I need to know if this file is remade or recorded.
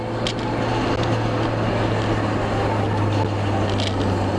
recorded